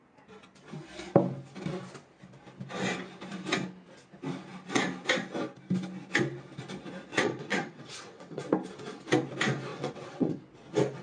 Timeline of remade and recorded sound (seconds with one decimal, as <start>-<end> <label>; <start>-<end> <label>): 0.0-7.1 recorded; 7.1-8.4 remade; 8.4-9.7 recorded; 9.7-10.4 remade; 10.4-11.0 recorded